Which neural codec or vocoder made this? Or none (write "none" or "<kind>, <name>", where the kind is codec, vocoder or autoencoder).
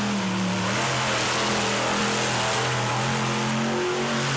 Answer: none